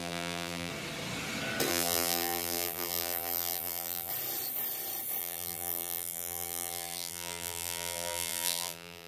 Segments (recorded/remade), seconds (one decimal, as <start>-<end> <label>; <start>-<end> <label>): 0.0-0.7 remade; 0.7-1.7 recorded; 1.7-4.1 remade; 4.1-5.2 recorded; 5.2-9.1 remade